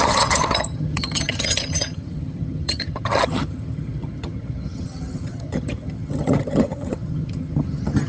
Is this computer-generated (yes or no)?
yes